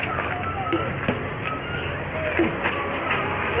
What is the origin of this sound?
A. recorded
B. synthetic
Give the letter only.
A